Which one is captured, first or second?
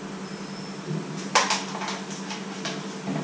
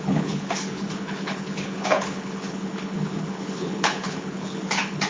first